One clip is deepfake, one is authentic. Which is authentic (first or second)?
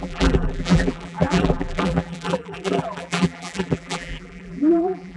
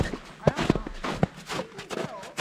second